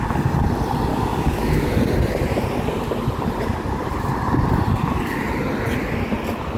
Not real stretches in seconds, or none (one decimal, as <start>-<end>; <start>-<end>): 0.9-1.8